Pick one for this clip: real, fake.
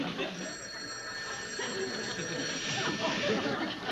real